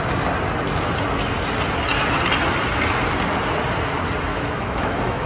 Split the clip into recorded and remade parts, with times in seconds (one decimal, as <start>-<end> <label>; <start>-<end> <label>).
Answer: 0.0-4.3 recorded; 4.3-5.3 remade